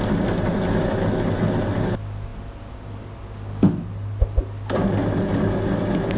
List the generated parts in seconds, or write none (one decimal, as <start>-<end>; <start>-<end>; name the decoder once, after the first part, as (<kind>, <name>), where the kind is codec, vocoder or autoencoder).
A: none